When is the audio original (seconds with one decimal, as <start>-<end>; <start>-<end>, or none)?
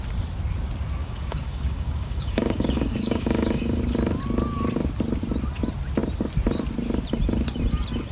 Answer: 0.0-1.0; 3.8-8.1